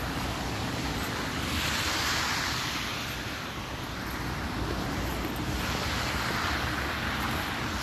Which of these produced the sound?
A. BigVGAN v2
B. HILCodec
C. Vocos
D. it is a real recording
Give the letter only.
D